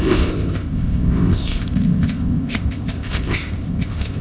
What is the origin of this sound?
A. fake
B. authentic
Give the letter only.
A